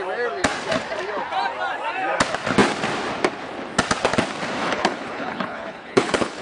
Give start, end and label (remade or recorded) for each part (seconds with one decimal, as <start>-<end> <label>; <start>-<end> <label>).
0.0-4.6 recorded; 4.6-6.4 remade